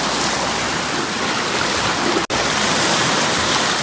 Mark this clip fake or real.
real